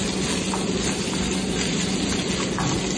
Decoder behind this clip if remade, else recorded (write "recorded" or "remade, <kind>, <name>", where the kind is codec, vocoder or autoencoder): recorded